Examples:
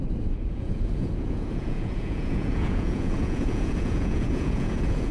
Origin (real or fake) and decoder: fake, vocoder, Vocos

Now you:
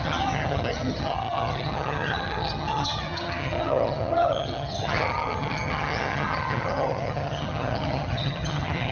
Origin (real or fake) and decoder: fake, vocoder, HiFi-GAN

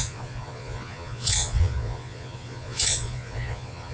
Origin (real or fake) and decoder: fake, vocoder, Vocos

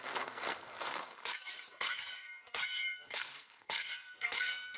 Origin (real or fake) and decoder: fake, codec, SNAC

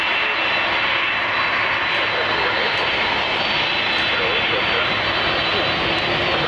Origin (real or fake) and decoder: real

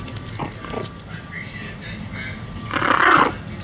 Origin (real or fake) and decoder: real